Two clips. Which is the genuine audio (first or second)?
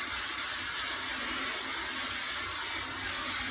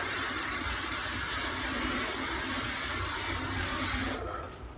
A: first